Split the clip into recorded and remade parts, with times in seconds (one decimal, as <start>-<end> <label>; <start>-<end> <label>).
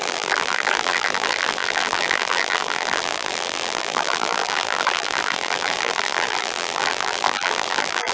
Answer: 0.0-8.1 remade